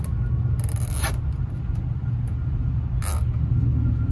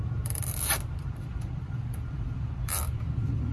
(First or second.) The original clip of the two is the first